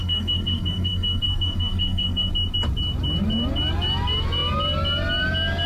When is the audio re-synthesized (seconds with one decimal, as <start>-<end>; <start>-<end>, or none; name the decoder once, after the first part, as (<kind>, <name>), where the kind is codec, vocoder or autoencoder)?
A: 0.0-2.3 (codec, SNAC)